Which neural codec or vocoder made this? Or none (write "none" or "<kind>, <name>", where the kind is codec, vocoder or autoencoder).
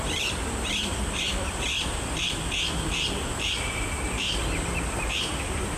vocoder, BigVGAN v2